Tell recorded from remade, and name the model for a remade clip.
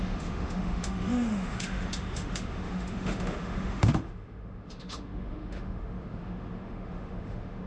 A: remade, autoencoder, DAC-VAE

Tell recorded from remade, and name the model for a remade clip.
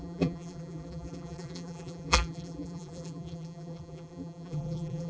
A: remade, vocoder, BigVGAN v2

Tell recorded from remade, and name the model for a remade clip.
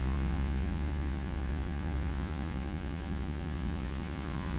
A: remade, vocoder, Vocos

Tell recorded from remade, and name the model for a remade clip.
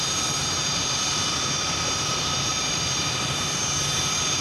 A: remade, vocoder, BigVGAN v2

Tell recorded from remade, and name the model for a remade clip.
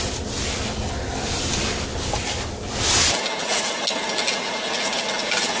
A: recorded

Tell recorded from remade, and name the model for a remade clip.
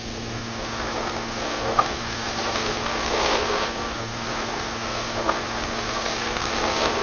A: remade, codec, SNAC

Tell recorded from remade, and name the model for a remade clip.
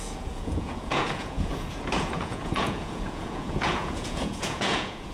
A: remade, vocoder, Vocos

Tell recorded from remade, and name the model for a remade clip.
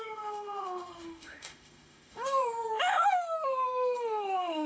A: remade, autoencoder, DAC-VAE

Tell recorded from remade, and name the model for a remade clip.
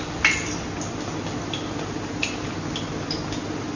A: recorded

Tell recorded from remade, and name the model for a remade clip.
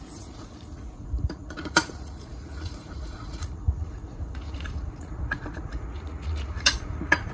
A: remade, vocoder, Vocos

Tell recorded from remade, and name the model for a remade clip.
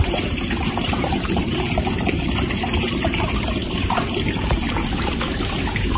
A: remade, vocoder, BigVGAN v2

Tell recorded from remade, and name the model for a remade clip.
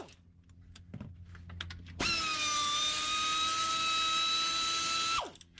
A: recorded